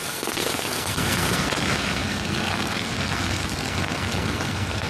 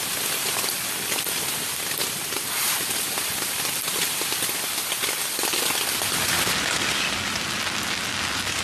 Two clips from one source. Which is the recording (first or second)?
second